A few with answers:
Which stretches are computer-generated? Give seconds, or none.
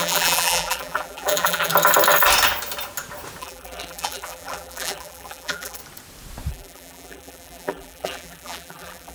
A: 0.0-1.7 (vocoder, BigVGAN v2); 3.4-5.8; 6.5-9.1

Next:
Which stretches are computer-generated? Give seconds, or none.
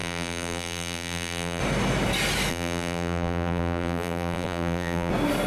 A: 0.0-1.6 (vocoder, BigVGAN v2); 2.5-5.1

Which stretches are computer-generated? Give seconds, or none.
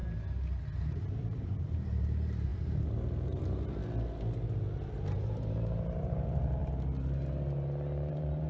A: 0.8-3.8 (vocoder, BigVGAN v2); 4.9-6.6; 8.1-8.5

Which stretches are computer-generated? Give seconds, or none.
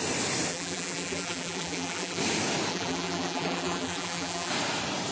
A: 0.5-2.2 (vocoder, BigVGAN v2); 2.7-4.5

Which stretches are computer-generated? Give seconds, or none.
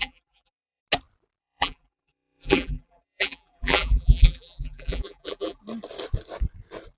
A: 0.0-0.8 (vocoder, BigVGAN v2); 1.4-5.6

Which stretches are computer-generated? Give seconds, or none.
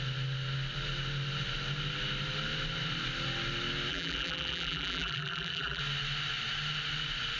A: 3.9-5.8 (vocoder, BigVGAN v2)